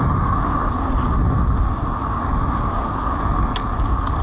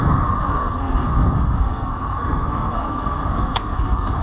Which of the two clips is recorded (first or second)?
first